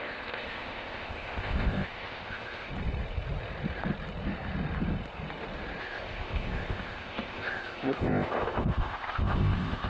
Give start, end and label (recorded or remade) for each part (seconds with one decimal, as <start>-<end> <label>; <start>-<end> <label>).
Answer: 0.0-2.7 remade; 2.7-5.8 recorded; 5.8-9.9 remade